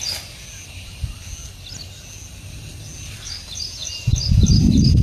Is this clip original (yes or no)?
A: yes